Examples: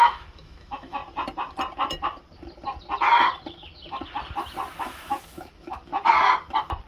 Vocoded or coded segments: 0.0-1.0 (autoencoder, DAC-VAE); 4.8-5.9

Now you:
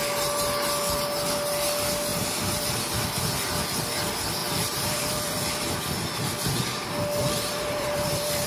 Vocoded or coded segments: 2.1-2.8 (vocoder, BigVGAN v2); 4.4-5.8; 7.2-8.5

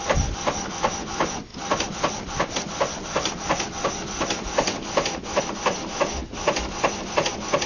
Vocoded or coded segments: none

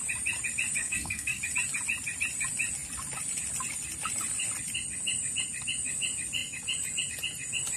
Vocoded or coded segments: 0.8-1.4 (codec, SNAC)